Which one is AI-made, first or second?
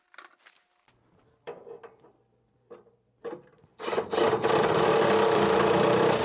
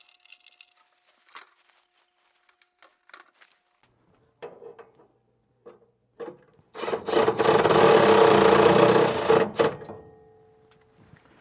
first